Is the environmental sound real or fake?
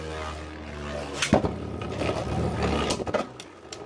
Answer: real